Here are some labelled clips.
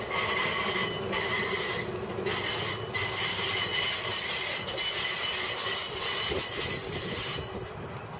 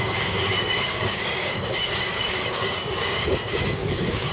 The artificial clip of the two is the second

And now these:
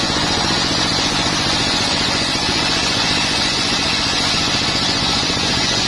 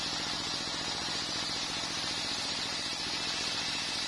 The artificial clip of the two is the first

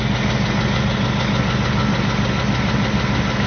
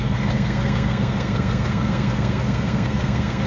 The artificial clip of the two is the second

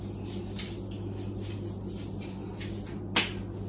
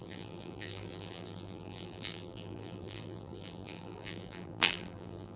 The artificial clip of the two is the second